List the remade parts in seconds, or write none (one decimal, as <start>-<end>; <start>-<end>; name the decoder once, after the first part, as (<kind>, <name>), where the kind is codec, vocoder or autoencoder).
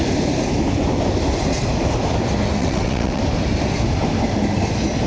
2.6-3.2 (vocoder, WaveNeXt)